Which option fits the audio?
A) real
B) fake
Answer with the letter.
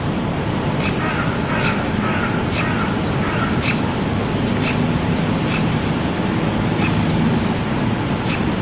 A